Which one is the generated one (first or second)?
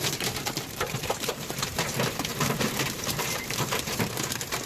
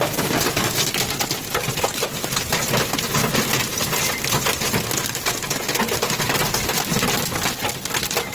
first